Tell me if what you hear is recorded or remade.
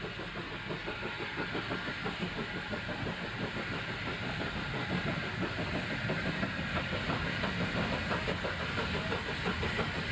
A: recorded